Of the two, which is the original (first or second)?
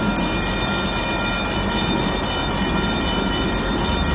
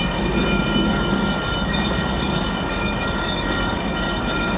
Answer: first